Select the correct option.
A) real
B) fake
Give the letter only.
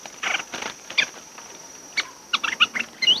A